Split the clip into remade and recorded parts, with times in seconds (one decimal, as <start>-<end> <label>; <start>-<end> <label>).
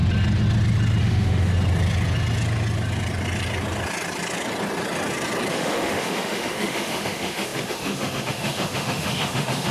0.0-1.0 recorded; 1.0-1.5 remade; 1.5-5.5 recorded; 5.5-9.7 remade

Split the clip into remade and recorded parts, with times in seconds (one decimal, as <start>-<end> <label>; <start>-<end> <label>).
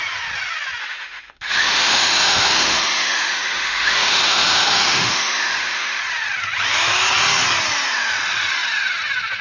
0.0-0.8 recorded; 0.8-6.0 remade; 6.0-9.4 recorded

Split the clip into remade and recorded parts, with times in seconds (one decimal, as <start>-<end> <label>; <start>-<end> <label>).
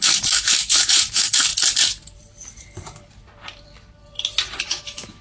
0.0-1.5 remade; 1.5-4.6 recorded; 4.6-5.2 remade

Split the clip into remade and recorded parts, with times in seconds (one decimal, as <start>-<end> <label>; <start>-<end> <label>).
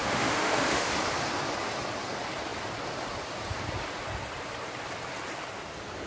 0.0-0.9 remade; 0.9-6.1 recorded